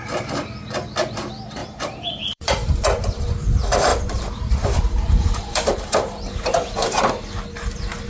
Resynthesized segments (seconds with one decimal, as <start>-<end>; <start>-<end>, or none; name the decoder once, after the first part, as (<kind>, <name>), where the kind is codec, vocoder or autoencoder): 1.6-3.2 (vocoder, BigVGAN v2); 3.9-7.1

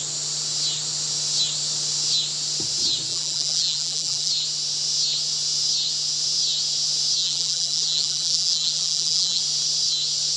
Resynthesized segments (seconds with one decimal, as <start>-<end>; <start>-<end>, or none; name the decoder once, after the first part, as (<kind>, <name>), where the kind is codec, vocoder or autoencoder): 3.1-4.3 (vocoder, BigVGAN v2); 7.2-9.4

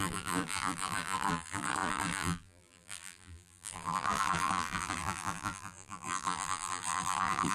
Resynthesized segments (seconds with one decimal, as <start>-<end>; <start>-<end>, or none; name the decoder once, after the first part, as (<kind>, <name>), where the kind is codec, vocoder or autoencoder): 0.0-7.5 (vocoder, BigVGAN v2)

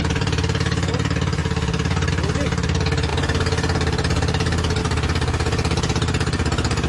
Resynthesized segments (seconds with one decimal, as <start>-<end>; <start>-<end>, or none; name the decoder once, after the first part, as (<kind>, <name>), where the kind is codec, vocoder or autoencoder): 0.0-6.9 (vocoder, BigVGAN v2)

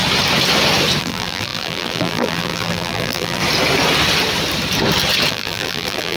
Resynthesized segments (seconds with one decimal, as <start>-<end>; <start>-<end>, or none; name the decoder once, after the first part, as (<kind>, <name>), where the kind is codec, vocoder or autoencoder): 1.0-3.4 (vocoder, BigVGAN v2); 5.3-6.2

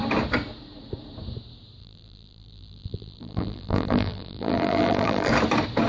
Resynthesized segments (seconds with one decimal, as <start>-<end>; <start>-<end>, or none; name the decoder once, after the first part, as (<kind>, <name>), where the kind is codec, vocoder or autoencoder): 1.8-5.3 (vocoder, BigVGAN v2)